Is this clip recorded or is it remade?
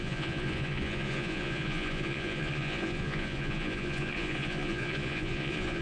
remade